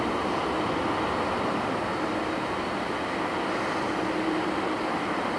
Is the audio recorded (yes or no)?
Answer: no